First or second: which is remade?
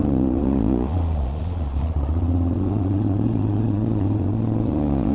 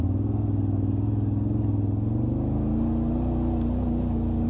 first